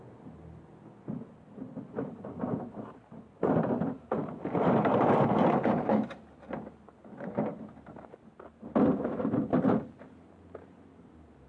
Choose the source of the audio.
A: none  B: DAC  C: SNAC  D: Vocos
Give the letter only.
A